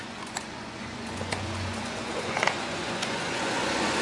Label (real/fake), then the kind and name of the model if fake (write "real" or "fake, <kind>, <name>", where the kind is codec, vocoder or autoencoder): fake, vocoder, Vocos